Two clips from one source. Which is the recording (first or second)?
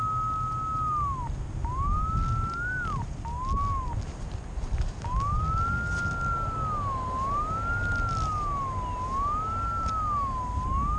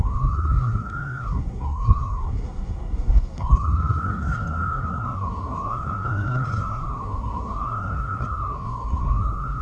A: first